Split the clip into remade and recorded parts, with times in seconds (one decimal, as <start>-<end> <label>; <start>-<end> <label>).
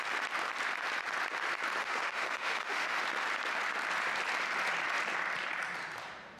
0.0-1.8 recorded; 1.8-3.0 remade; 3.0-6.4 recorded